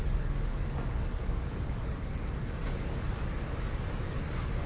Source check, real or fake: fake